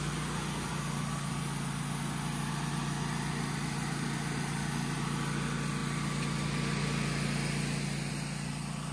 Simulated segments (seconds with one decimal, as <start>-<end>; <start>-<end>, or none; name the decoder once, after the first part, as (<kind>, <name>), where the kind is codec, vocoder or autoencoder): none